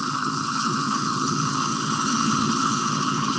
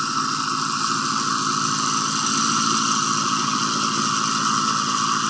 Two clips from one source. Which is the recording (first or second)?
second